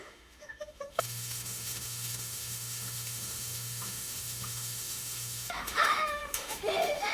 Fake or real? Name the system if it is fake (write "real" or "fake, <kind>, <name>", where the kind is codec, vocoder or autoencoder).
fake, autoencoder, DAC-VAE